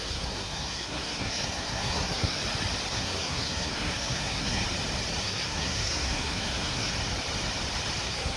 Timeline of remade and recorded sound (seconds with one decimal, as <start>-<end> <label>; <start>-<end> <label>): 0.0-2.4 remade; 2.4-2.9 recorded; 2.9-4.6 remade; 4.6-5.2 recorded; 5.2-6.9 remade; 6.9-8.0 recorded; 8.0-8.4 remade